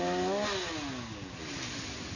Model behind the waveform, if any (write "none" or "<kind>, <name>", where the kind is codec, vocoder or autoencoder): none